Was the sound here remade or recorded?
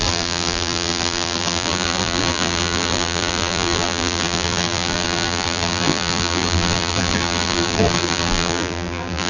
remade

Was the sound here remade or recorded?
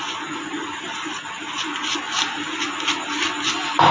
recorded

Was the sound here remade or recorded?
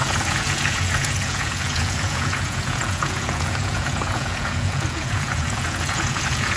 remade